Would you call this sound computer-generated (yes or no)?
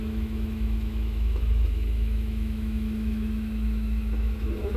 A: yes